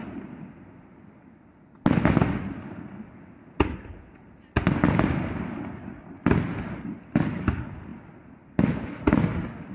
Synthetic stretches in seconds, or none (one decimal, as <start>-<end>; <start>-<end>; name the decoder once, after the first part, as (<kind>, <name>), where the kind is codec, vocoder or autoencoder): none